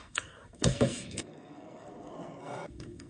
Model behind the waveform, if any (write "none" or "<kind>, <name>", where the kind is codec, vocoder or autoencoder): codec, SNAC